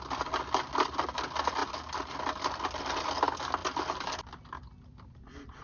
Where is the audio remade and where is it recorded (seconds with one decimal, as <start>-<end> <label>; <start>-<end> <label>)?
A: 0.0-5.6 recorded